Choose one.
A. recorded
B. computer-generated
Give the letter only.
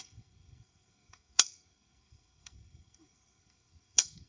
B